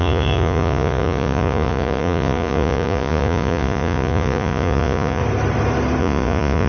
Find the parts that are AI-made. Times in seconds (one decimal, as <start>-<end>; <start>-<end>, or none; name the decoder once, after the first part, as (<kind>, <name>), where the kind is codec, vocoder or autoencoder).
0.0-5.2 (vocoder, Vocos); 6.0-6.7